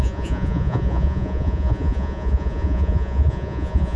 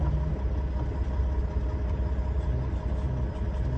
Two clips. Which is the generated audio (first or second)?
first